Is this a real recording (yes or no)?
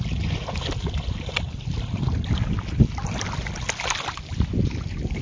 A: yes